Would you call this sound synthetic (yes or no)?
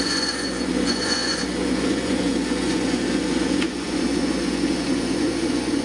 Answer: yes